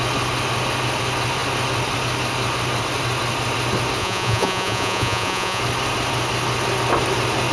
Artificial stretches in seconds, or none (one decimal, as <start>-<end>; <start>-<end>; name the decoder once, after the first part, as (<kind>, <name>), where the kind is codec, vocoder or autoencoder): 4.0-5.6 (vocoder, Vocos)